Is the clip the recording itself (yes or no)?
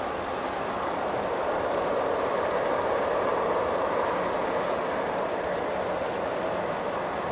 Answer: yes